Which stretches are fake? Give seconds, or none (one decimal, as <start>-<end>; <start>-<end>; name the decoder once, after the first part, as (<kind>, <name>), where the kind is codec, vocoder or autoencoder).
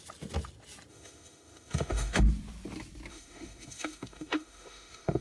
0.9-2.2 (autoencoder, DAC-VAE); 3.1-5.2